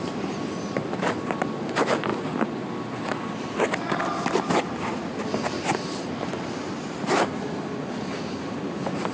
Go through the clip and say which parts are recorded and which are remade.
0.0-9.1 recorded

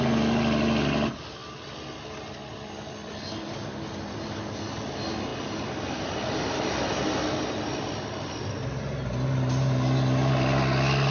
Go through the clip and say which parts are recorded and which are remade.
0.0-11.1 recorded